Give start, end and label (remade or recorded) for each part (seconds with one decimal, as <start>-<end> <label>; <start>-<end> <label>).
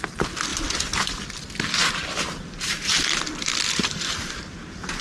0.0-5.0 recorded